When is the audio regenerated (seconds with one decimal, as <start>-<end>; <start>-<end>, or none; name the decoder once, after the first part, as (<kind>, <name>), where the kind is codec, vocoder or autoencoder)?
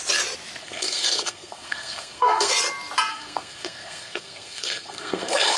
0.6-2.5 (codec, SNAC); 3.1-5.6